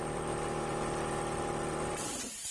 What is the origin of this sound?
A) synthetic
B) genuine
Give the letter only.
A